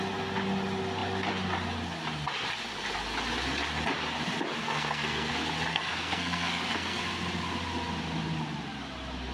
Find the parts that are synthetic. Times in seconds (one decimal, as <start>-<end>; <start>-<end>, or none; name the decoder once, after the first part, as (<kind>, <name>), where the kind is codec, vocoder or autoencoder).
4.6-5.3 (codec, SNAC); 5.7-7.0